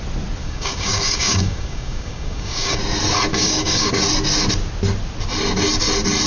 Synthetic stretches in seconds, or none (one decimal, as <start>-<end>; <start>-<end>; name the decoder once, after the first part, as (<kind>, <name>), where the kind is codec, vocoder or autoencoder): 0.4-2.8 (codec, DAC); 3.3-3.9